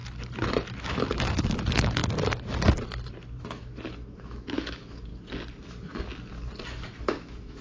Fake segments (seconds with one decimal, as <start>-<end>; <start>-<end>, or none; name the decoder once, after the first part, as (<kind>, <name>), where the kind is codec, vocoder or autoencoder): 0.8-2.0 (autoencoder, DAC-VAE); 3.4-5.1; 7.0-7.6